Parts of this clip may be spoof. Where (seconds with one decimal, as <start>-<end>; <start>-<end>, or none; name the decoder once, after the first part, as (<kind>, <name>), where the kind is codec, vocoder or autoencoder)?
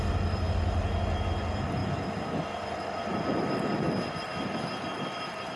none